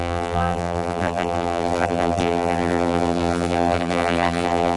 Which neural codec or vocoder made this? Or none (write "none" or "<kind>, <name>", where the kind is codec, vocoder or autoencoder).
vocoder, BigVGAN v2